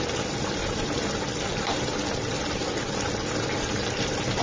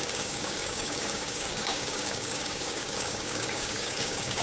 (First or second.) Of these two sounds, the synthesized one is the second